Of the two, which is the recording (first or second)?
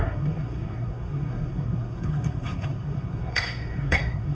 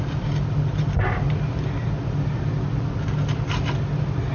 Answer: second